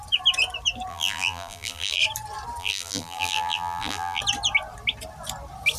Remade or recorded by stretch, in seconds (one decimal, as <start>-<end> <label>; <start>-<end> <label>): 0.0-0.9 recorded; 0.9-2.0 remade; 2.0-2.6 recorded; 2.6-4.2 remade; 4.2-5.8 recorded

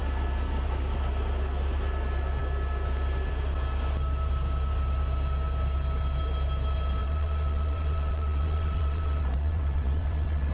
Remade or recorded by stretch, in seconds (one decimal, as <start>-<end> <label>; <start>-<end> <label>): 0.0-7.0 recorded; 7.0-10.5 remade

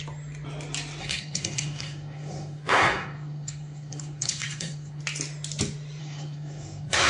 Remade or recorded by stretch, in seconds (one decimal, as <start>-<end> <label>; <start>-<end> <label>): 0.0-1.0 recorded; 1.0-5.0 remade; 5.0-6.0 recorded; 6.0-7.1 remade

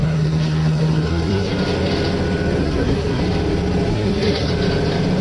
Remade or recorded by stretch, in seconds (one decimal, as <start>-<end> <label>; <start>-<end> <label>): 0.0-1.5 remade; 1.5-2.6 recorded; 2.6-3.2 remade; 3.2-3.9 recorded; 3.9-4.5 remade; 4.5-5.2 recorded

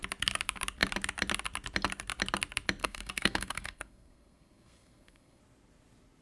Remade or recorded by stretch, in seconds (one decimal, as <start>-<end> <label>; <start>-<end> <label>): 0.0-2.8 recorded; 2.8-5.4 remade; 5.4-6.2 recorded

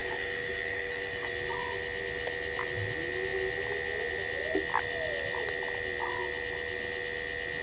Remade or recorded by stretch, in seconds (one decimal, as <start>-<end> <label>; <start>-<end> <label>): 0.0-1.3 remade; 1.3-7.6 recorded